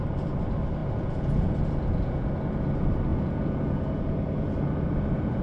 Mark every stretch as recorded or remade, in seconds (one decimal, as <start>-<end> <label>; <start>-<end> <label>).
0.0-0.8 recorded; 0.8-2.3 remade; 2.3-3.1 recorded; 3.1-5.4 remade